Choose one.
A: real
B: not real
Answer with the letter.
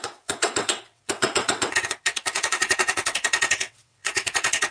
B